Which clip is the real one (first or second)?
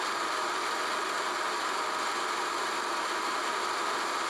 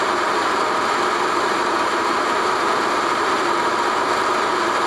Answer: first